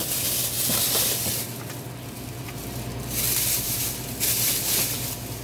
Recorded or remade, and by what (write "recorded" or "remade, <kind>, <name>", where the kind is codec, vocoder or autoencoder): recorded